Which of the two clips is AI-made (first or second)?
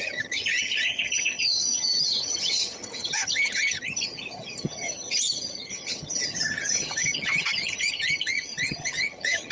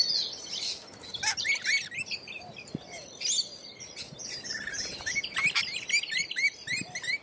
first